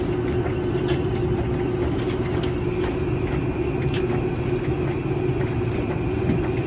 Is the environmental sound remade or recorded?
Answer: recorded